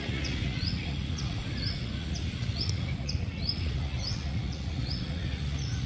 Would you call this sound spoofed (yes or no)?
yes